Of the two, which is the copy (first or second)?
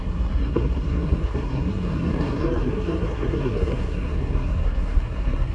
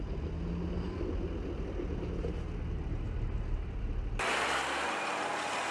first